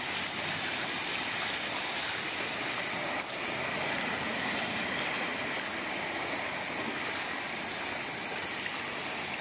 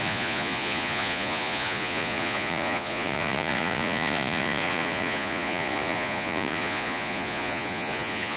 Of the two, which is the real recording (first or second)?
first